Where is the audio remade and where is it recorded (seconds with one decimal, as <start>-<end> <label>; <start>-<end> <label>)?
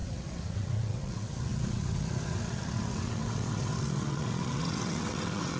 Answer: 0.0-5.6 remade